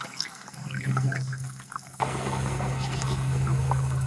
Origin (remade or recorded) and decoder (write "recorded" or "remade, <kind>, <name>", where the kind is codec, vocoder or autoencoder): remade, codec, SNAC